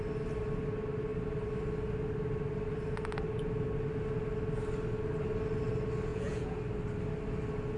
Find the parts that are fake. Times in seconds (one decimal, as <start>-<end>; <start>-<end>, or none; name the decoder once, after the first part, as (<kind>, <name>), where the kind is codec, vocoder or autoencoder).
6.1-6.6 (vocoder, Vocos)